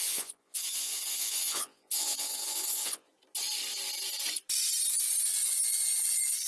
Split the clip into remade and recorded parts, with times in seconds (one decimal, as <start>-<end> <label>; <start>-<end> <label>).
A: 0.0-3.1 remade; 3.1-6.5 recorded